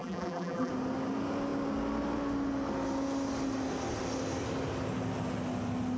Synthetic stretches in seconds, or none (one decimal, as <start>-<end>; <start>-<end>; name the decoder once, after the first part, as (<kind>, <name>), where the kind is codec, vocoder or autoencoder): 0.0-0.7 (vocoder, BigVGAN v2)